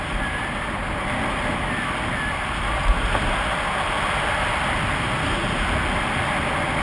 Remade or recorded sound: recorded